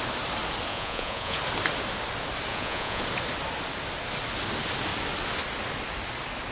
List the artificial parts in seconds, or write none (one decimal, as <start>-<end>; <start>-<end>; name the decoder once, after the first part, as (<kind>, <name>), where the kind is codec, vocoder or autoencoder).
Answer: 0.7-1.4 (vocoder, Vocos); 2.5-3.0